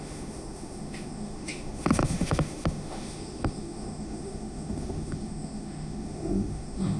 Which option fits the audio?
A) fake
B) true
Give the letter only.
A